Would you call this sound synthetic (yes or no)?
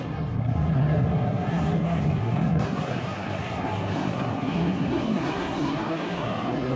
yes